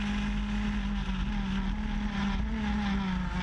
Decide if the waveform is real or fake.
real